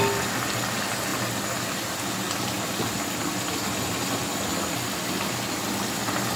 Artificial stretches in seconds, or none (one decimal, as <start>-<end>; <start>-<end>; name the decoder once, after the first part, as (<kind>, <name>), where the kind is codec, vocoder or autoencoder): none